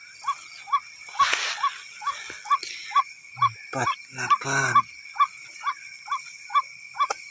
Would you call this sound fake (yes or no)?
no